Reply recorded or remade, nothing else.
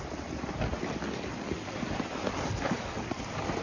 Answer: recorded